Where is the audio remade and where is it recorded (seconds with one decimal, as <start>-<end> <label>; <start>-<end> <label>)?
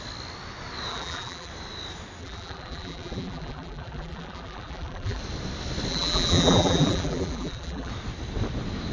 0.0-0.9 recorded; 0.9-1.5 remade; 1.5-2.2 recorded; 2.2-5.2 remade; 5.2-5.9 recorded; 5.9-7.9 remade; 7.9-8.9 recorded